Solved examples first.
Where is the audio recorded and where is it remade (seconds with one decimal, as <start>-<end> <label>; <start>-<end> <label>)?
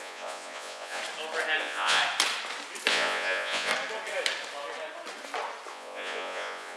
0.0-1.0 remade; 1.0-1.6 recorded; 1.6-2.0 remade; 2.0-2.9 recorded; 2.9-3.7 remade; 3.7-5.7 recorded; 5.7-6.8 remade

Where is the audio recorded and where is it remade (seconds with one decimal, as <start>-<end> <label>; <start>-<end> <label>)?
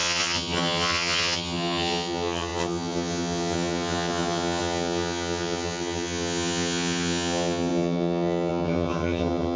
0.0-9.6 remade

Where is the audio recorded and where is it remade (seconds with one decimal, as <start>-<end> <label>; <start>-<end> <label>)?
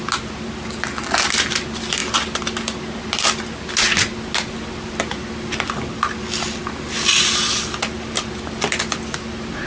0.0-9.7 recorded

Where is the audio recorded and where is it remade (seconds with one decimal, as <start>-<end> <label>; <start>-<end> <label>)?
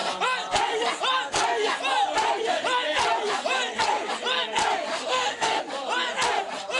0.0-4.9 recorded; 4.9-5.6 remade; 5.6-6.8 recorded